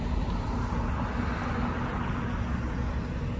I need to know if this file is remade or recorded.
recorded